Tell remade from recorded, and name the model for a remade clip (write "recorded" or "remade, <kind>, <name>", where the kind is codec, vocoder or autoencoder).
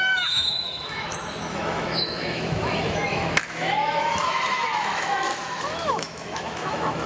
remade, autoencoder, DAC-VAE